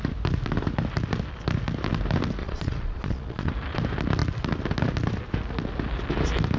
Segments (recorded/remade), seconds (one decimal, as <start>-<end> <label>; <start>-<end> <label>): 0.0-2.4 recorded; 2.4-3.5 remade; 3.5-6.6 recorded